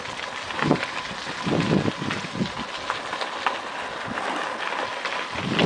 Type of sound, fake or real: real